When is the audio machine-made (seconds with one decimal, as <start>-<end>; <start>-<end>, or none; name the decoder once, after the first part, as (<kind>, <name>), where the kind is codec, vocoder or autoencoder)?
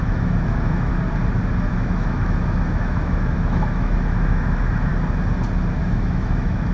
0.0-0.9 (autoencoder, DAC-VAE); 1.7-4.9; 5.8-6.7